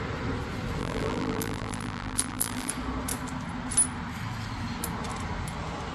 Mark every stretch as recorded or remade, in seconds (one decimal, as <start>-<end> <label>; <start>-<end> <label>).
0.0-0.8 recorded; 0.8-2.7 remade; 2.7-5.9 recorded